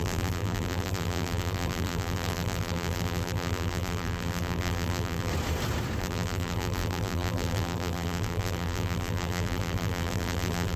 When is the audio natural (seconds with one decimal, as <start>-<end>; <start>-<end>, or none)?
5.3-6.0